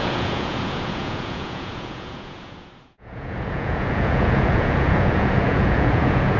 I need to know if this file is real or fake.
fake